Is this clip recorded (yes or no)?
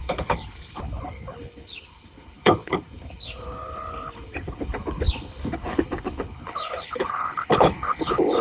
no